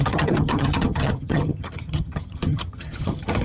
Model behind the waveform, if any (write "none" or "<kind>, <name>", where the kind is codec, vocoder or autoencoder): vocoder, HiFi-GAN